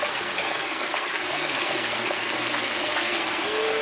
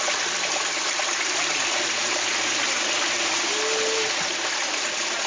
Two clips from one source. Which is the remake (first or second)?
first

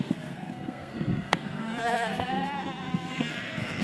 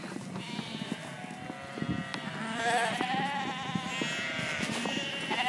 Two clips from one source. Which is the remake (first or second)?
first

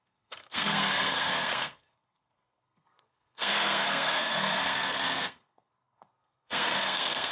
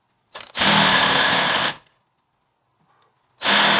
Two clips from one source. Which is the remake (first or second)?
first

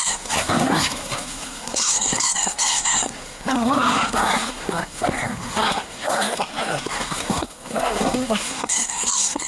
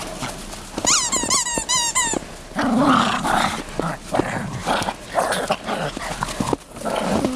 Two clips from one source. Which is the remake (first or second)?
first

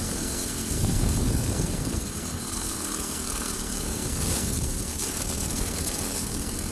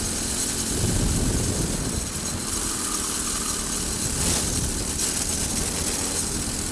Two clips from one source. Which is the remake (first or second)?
first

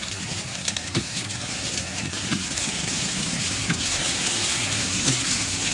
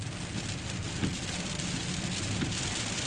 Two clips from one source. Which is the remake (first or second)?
first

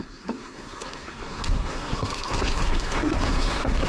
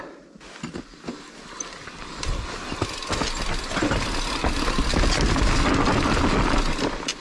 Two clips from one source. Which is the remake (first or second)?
first